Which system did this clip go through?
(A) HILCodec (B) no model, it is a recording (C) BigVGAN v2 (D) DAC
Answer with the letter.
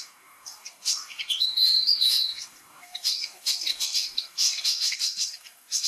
D